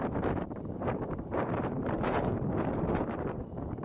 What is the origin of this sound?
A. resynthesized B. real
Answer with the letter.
A